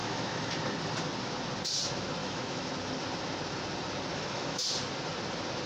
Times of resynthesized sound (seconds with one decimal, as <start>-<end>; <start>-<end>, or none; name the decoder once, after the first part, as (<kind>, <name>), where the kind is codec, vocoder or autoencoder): 0.0-0.5 (autoencoder, DAC-VAE); 2.2-2.7; 4.1-4.6